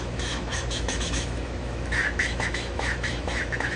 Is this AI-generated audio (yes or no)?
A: yes